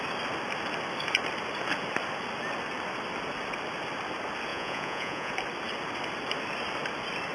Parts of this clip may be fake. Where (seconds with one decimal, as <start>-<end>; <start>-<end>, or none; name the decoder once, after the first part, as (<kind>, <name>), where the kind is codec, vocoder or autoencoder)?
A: 4.5-5.3 (vocoder, Vocos)